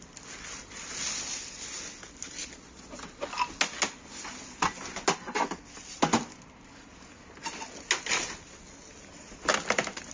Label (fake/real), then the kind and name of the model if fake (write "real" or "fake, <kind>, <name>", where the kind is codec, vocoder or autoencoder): real